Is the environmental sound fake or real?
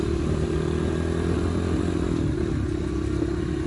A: real